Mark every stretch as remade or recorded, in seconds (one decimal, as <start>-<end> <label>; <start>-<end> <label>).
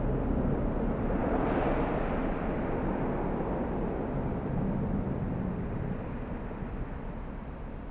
0.0-7.9 recorded